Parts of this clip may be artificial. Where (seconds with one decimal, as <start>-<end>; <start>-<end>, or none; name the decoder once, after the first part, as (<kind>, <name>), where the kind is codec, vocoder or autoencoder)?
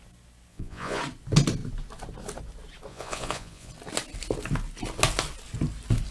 0.5-1.0 (vocoder, Vocos); 2.9-3.7